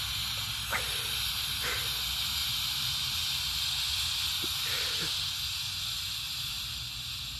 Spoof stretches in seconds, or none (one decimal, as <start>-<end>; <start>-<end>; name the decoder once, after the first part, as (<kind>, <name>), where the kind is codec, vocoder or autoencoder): 2.4-3.1 (vocoder, BigVGAN v2)